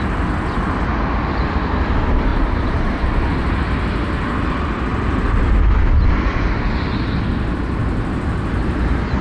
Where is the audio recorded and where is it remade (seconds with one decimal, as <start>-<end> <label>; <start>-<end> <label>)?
0.0-2.3 recorded; 2.3-2.9 remade; 2.9-7.8 recorded; 7.8-9.2 remade